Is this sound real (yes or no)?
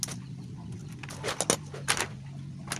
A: yes